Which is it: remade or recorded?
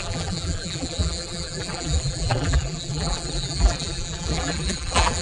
remade